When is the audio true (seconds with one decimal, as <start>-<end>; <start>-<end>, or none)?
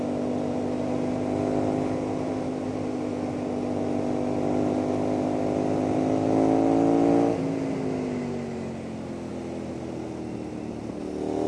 0.0-11.5